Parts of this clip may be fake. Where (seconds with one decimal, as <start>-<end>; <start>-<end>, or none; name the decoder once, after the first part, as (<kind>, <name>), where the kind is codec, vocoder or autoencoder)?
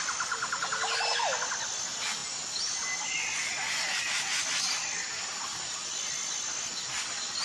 none